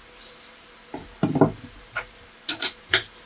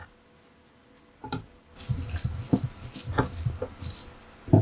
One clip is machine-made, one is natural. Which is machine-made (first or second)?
first